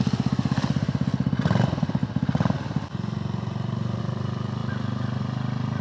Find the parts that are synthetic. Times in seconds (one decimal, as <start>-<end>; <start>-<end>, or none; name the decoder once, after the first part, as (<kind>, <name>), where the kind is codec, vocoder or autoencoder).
none